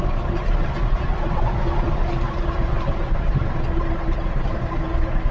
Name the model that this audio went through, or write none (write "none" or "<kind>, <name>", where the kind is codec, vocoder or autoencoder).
none